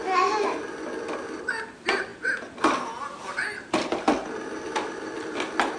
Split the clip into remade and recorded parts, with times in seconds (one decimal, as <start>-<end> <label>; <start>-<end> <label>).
0.0-5.8 recorded

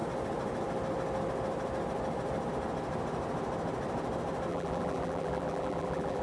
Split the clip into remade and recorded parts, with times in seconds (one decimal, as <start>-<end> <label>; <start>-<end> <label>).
0.0-4.5 recorded; 4.5-6.2 remade

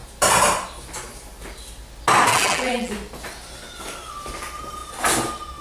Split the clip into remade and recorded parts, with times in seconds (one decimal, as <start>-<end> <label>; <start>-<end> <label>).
0.0-2.3 recorded; 2.3-2.9 remade; 2.9-5.6 recorded

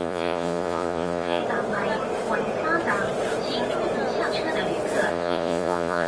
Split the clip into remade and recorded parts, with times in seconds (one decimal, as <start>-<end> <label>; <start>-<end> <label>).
0.0-1.4 remade; 1.4-5.1 recorded; 5.1-6.1 remade

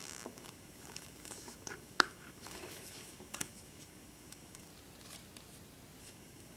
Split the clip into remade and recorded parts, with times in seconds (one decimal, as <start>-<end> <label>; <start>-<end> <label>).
0.0-4.7 remade; 4.7-6.0 recorded; 6.0-6.6 remade

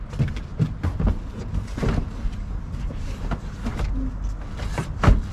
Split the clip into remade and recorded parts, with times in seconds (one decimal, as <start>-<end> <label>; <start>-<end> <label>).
0.0-5.3 recorded

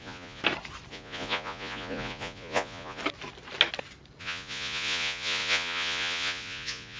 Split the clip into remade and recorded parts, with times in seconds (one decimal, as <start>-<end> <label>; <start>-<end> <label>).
0.0-0.4 remade; 0.4-0.9 recorded; 0.9-3.0 remade; 3.0-4.2 recorded; 4.2-7.0 remade